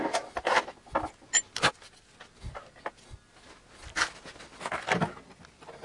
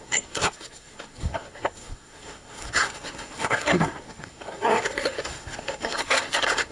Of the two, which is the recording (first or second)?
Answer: first